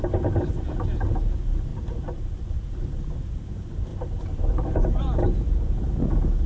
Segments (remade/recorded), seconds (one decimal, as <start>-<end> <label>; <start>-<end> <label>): 0.0-1.7 recorded; 1.7-2.7 remade; 2.7-3.9 recorded; 3.9-5.7 remade; 5.7-6.5 recorded